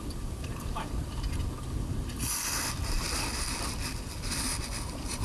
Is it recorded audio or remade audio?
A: recorded